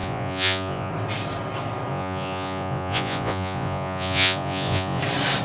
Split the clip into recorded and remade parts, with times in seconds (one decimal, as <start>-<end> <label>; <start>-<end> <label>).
0.0-0.9 remade; 0.9-1.9 recorded; 1.9-5.0 remade; 5.0-5.4 recorded